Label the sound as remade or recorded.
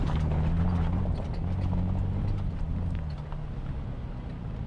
recorded